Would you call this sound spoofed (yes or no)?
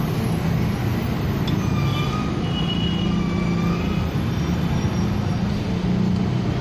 no